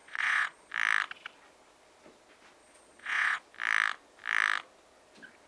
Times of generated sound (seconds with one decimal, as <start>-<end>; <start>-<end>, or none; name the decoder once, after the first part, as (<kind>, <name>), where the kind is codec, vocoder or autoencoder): 0.0-0.7 (vocoder, Vocos); 2.6-3.4